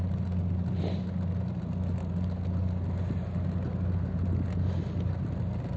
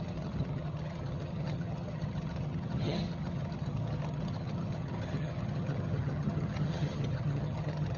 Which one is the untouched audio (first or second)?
first